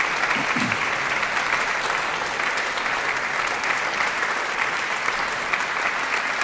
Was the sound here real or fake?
real